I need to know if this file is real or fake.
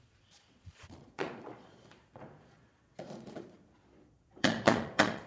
fake